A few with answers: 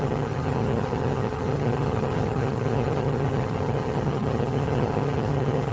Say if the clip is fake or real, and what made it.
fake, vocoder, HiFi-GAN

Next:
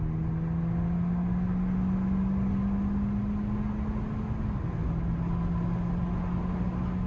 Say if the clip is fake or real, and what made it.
real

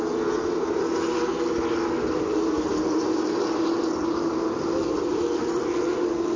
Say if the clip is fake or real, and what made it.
real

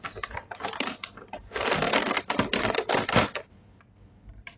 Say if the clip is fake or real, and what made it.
real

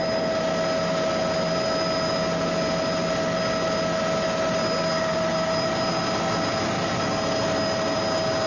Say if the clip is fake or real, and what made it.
real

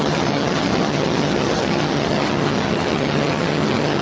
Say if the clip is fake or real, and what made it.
fake, vocoder, HiFi-GAN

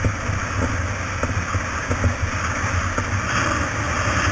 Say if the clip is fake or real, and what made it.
real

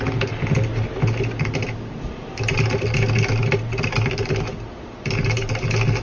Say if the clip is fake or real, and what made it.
real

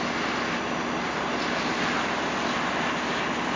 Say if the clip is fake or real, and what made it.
real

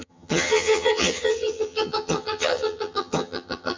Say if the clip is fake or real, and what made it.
fake, vocoder, HiFi-GAN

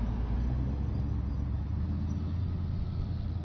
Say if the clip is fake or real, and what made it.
real